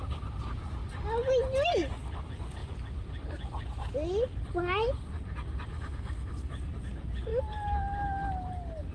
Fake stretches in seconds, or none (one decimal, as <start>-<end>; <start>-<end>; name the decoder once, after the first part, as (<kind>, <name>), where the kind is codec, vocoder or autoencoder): 5.7-6.5 (autoencoder, DAC-VAE)